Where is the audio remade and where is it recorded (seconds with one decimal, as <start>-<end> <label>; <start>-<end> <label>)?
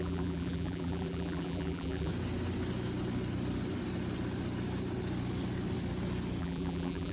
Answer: 0.0-2.1 remade; 2.1-6.4 recorded; 6.4-7.1 remade